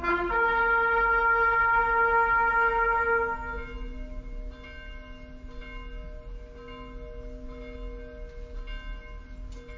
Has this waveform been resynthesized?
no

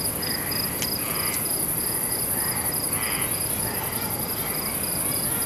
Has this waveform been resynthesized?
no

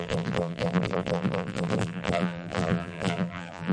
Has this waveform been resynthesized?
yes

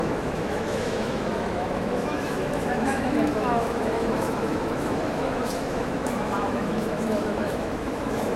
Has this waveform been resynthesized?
yes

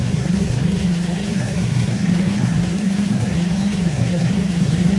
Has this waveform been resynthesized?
yes